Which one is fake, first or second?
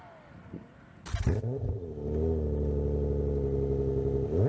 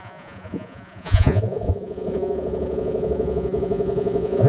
second